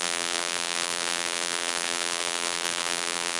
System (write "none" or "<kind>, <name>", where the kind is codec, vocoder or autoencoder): vocoder, BigVGAN v2